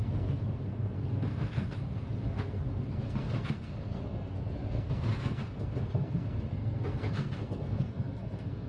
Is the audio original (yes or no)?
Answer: no